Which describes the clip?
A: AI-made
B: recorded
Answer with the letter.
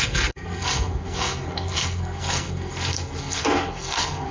A